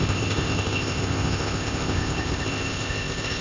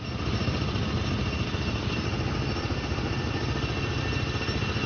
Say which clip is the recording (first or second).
second